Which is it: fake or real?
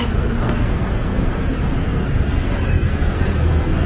fake